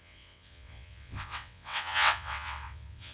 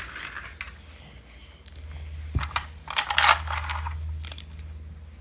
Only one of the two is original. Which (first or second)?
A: second